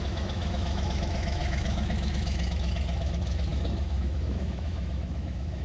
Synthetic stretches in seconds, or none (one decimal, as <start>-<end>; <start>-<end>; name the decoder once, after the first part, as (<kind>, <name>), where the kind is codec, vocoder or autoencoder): 0.0-5.6 (autoencoder, DAC-VAE)